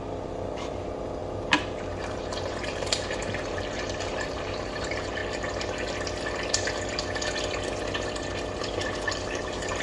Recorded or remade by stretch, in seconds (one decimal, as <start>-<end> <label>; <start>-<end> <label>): 0.0-5.2 remade; 5.2-8.6 recorded; 8.6-9.8 remade